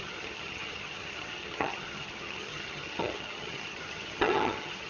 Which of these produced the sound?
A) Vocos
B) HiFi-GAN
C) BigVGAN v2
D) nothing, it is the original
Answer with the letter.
B